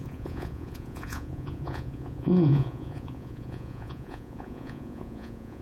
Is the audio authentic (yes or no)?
no